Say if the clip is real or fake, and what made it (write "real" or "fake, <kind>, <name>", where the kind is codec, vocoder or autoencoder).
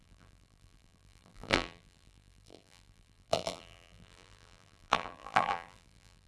fake, vocoder, BigVGAN v2